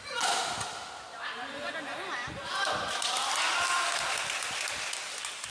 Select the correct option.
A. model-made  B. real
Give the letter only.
B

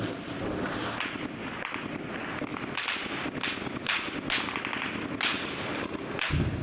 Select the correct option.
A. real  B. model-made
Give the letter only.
A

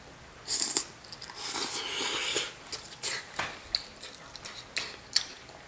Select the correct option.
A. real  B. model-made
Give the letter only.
A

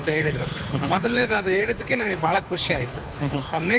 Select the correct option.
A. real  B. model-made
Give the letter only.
B